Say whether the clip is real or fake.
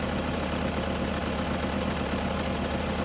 real